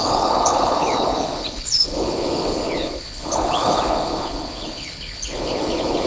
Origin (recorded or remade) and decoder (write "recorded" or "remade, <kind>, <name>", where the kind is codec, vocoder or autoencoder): remade, codec, HILCodec